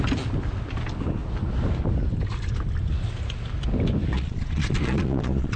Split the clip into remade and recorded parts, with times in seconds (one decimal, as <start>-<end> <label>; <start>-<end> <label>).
0.0-4.1 recorded; 4.1-5.6 remade